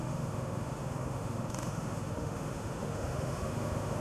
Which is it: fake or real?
fake